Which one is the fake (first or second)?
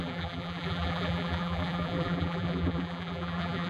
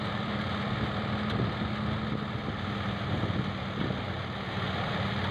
first